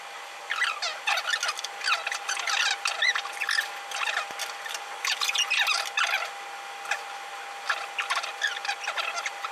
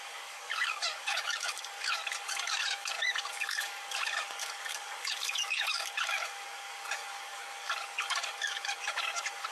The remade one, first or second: second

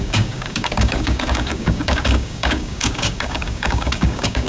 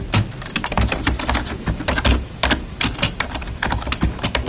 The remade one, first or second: first